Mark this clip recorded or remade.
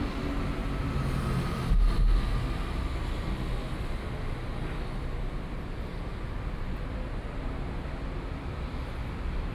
recorded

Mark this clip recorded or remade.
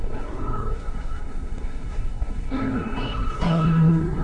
remade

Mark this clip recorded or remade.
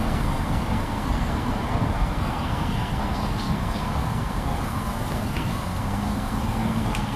remade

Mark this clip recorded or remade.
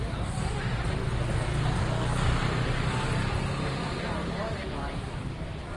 recorded